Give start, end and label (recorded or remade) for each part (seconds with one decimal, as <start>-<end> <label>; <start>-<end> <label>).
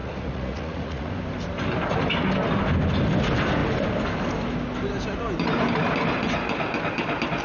0.0-1.1 remade; 1.1-7.4 recorded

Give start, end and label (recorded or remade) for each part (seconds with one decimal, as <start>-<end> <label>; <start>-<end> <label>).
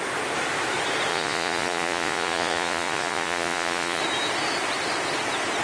0.0-1.1 recorded; 1.1-4.0 remade; 4.0-5.6 recorded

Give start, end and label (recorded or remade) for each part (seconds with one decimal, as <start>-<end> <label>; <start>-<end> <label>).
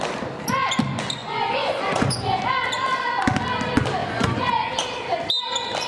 0.0-1.2 recorded; 1.2-2.4 remade; 2.4-4.0 recorded; 4.0-4.7 remade; 4.7-5.9 recorded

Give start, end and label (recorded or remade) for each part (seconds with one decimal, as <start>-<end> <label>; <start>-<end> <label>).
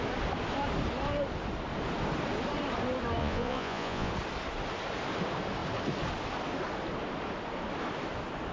0.0-3.2 recorded; 3.2-4.1 remade; 4.1-8.5 recorded